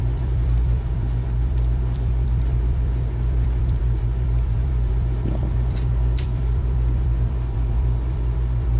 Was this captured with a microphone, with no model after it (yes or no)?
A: no